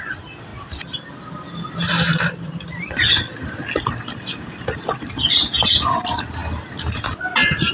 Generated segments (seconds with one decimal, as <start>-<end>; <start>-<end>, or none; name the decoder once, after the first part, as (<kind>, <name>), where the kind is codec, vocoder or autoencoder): none

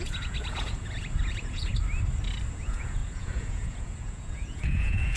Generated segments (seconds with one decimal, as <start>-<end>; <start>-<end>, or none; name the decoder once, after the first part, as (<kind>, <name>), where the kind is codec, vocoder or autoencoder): 0.0-1.7 (vocoder, Vocos); 2.5-5.2